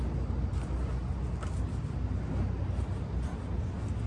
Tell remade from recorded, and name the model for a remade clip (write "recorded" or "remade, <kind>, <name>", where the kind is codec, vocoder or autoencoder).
recorded